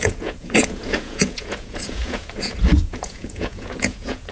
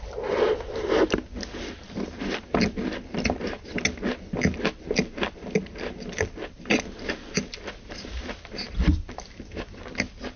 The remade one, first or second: first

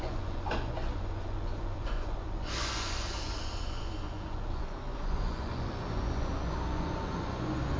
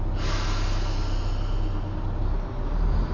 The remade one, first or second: first